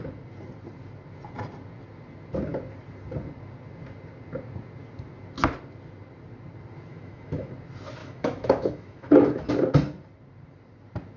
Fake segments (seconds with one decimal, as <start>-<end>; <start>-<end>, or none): 6.9-7.5; 8.0-9.5